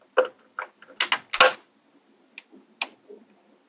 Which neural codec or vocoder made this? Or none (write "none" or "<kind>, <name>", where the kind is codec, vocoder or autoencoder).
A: none